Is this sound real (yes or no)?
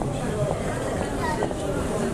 no